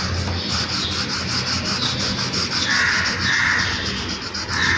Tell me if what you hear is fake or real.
real